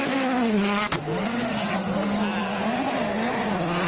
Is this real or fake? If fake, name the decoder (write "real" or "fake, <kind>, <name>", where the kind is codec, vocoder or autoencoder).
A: real